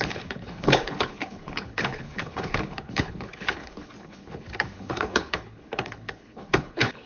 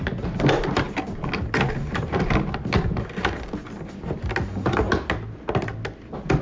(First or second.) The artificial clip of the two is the first